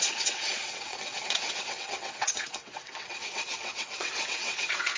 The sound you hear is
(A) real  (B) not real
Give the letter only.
B